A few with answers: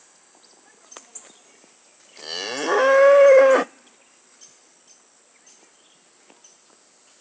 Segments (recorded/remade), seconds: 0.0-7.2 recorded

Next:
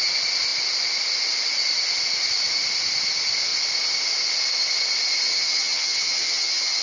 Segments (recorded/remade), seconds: 0.0-5.3 recorded; 5.3-6.8 remade

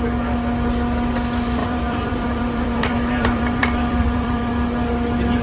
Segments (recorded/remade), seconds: 0.0-1.6 recorded; 1.6-4.5 remade; 4.5-5.4 recorded